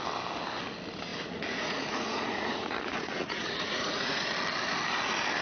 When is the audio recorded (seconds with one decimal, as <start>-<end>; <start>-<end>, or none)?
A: 0.0-1.1; 4.3-5.4